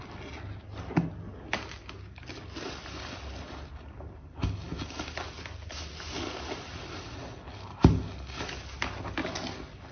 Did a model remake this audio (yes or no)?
no